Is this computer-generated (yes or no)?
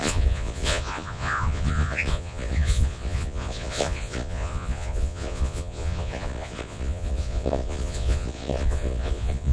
yes